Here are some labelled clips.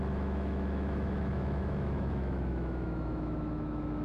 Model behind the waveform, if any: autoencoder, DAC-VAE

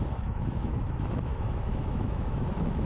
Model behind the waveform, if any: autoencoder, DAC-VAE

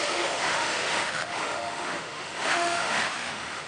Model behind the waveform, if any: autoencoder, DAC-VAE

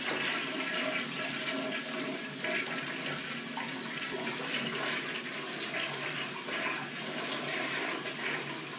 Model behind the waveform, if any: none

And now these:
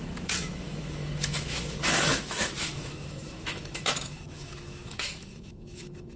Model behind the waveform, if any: autoencoder, DAC-VAE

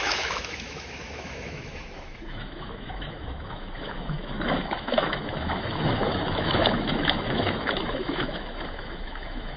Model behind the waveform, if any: autoencoder, DAC-VAE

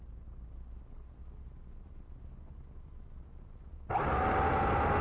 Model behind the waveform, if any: none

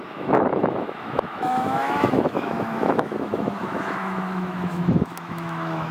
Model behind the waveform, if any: autoencoder, DAC-VAE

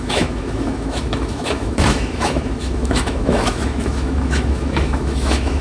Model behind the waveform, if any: autoencoder, DAC-VAE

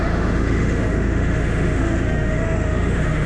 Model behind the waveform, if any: autoencoder, DAC-VAE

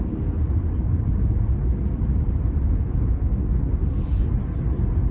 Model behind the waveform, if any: none